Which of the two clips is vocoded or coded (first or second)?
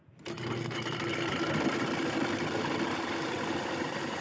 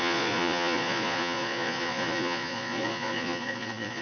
second